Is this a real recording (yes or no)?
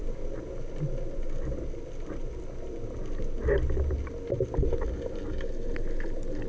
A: yes